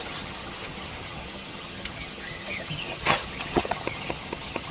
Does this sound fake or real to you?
fake